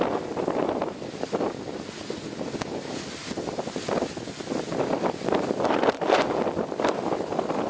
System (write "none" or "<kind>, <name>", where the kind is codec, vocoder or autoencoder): none